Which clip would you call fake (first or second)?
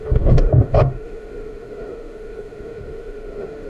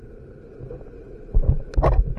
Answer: first